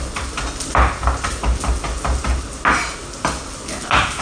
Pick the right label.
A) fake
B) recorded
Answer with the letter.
B